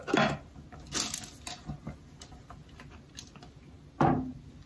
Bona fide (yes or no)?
yes